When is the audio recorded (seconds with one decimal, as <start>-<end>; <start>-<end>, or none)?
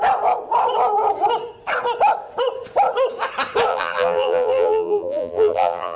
0.0-3.7